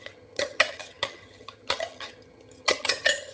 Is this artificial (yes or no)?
yes